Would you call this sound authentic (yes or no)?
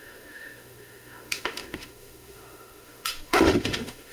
no